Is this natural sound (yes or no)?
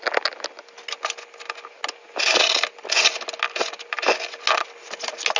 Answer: yes